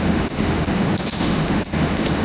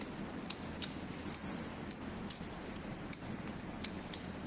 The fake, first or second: first